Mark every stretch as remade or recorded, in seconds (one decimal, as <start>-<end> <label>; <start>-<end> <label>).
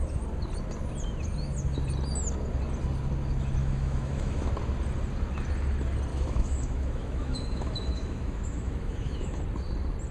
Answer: 0.0-3.6 recorded; 3.6-4.5 remade; 4.5-6.1 recorded; 6.1-9.4 remade; 9.4-10.1 recorded